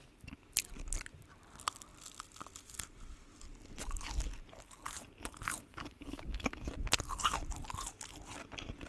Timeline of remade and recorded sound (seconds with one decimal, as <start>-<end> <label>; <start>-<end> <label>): 0.0-5.7 recorded; 5.7-6.7 remade; 6.7-8.9 recorded